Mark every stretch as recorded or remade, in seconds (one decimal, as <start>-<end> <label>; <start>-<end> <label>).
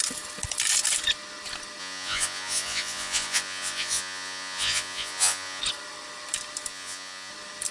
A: 0.0-1.8 recorded; 1.8-5.6 remade; 5.6-6.7 recorded; 6.7-7.3 remade; 7.3-7.7 recorded